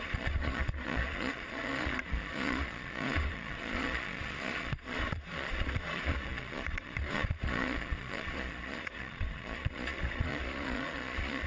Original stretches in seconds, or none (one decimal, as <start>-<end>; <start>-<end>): none